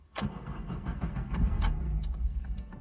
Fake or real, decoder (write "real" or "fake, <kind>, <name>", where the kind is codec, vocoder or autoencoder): fake, codec, SNAC